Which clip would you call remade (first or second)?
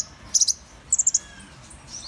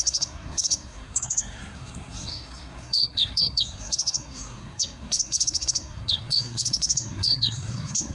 second